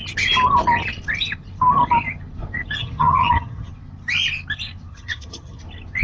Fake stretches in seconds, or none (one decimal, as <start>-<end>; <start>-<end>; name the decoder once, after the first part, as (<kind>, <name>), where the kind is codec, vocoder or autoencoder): 2.8-3.7 (vocoder, HiFi-GAN); 4.9-5.6